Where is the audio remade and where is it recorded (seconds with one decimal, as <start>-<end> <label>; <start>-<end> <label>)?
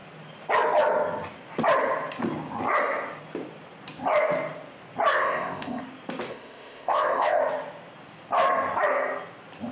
0.0-5.1 recorded; 5.1-5.8 remade; 5.8-6.3 recorded; 6.3-7.4 remade; 7.4-9.7 recorded